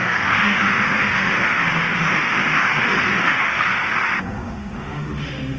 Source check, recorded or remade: remade